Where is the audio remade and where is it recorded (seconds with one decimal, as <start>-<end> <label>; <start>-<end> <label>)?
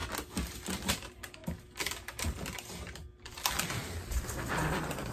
0.0-0.9 recorded; 0.9-1.4 remade; 1.4-4.5 recorded; 4.5-5.1 remade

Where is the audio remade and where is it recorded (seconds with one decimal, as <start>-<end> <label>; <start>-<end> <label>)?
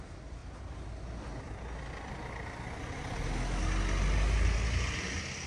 0.0-5.5 recorded